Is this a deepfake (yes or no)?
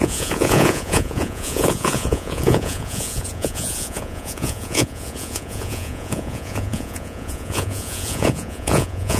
yes